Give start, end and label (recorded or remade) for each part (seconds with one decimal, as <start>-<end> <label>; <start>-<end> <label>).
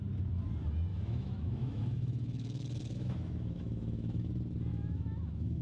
0.0-0.9 recorded; 0.9-4.3 remade; 4.3-4.7 recorded; 4.7-5.6 remade